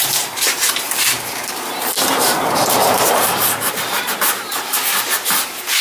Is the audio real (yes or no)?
no